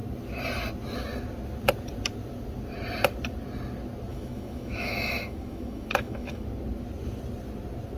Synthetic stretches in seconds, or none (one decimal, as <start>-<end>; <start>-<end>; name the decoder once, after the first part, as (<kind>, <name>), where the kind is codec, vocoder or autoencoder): 4.1-6.4 (autoencoder, DAC-VAE)